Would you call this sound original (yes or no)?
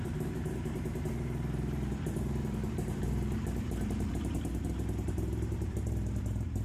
no